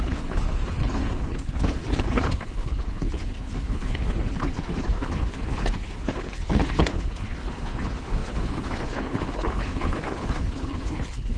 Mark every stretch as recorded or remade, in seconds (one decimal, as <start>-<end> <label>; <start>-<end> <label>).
0.0-11.4 remade